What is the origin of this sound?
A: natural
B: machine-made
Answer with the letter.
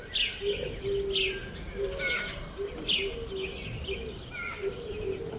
A